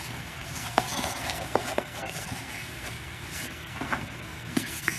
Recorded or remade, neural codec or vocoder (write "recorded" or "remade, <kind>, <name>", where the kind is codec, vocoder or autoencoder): remade, codec, SNAC